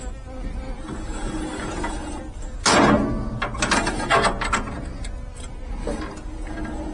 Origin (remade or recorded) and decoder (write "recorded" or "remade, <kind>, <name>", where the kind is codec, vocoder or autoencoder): recorded